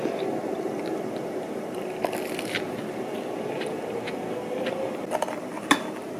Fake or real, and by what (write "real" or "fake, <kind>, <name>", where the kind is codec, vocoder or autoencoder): real